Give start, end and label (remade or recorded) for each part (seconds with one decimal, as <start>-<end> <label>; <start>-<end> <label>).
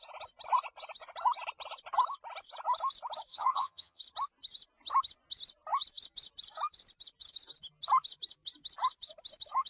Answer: 0.0-3.3 recorded; 3.3-4.0 remade; 4.0-9.7 recorded